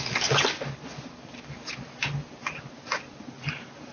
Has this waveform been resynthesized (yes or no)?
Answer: no